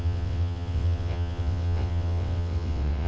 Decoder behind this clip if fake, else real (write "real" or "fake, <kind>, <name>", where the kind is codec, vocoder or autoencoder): fake, vocoder, WaveNeXt